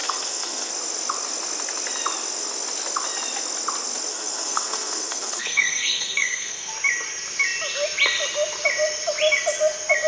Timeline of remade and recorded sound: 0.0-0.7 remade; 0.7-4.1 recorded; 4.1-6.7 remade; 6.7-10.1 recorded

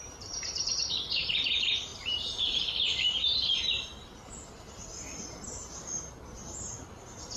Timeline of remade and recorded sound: 0.0-3.9 remade; 3.9-7.4 recorded

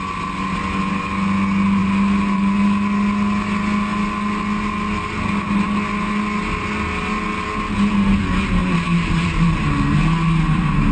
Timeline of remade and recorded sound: 0.0-1.8 recorded; 1.8-2.6 remade; 2.6-8.6 recorded; 8.6-9.8 remade; 9.8-10.9 recorded

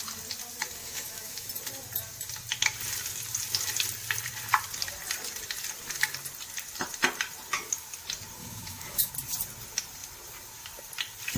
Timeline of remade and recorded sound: 0.0-0.8 recorded; 0.8-1.5 remade; 1.5-8.4 recorded; 8.4-9.1 remade; 9.1-11.4 recorded

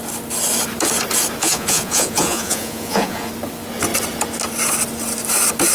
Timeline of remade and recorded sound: 0.0-1.4 recorded; 1.4-3.3 remade; 3.3-5.7 recorded

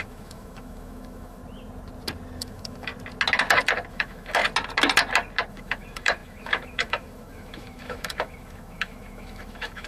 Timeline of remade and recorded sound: 0.0-1.4 remade; 1.4-2.4 recorded; 2.4-2.9 remade; 2.9-3.9 recorded; 3.9-4.4 remade; 4.4-5.5 recorded; 5.5-9.9 remade